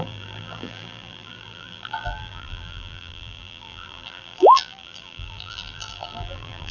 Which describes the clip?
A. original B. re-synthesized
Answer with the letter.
B